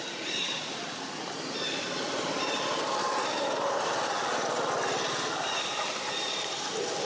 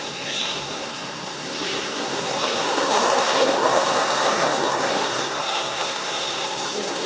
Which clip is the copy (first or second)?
second